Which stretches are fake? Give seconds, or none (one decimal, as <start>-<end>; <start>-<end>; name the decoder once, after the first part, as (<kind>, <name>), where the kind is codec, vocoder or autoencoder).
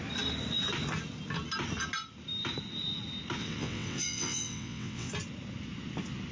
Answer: 3.4-5.1 (vocoder, WaveNeXt)